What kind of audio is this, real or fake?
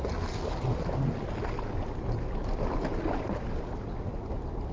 real